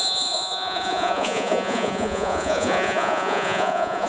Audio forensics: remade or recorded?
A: remade